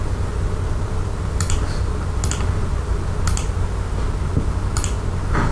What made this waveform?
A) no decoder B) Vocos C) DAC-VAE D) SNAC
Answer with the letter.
A